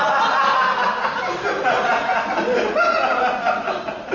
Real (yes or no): yes